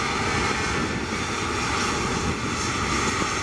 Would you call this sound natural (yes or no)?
yes